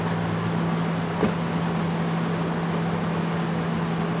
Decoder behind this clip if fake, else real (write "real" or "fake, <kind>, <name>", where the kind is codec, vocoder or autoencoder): real